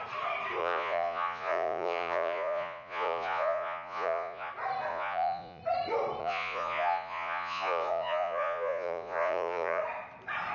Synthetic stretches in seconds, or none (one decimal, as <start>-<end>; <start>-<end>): 0.6-4.5; 4.9-5.6; 6.2-9.8